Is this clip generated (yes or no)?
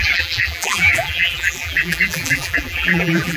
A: yes